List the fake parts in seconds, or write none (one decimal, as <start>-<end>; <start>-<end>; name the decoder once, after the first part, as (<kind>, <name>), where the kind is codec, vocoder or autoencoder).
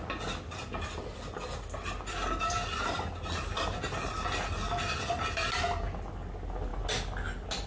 none